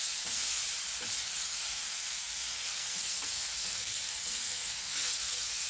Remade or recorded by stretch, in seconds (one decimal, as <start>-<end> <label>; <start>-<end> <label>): 0.0-0.6 remade; 0.6-1.2 recorded; 1.2-5.7 remade